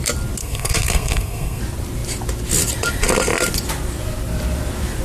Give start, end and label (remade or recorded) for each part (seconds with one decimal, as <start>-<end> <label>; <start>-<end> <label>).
0.0-0.4 recorded; 0.4-1.6 remade; 1.6-5.0 recorded